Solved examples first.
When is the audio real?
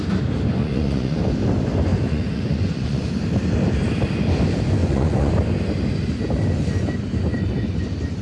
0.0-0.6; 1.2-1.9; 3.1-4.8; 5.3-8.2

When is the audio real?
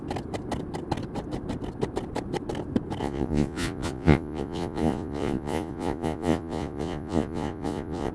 0.0-3.0